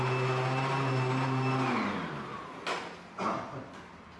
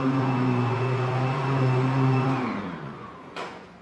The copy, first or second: second